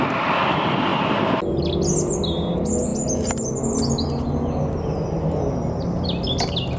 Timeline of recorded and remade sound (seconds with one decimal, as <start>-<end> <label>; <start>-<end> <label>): 0.0-6.8 recorded